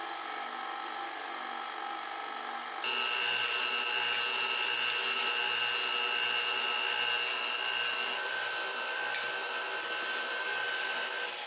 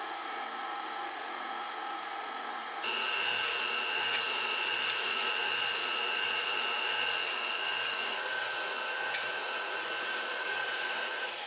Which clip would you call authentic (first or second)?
first